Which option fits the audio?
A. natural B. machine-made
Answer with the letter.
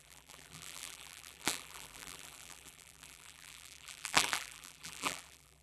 B